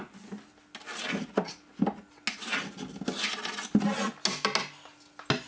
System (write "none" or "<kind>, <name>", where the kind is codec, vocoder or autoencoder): none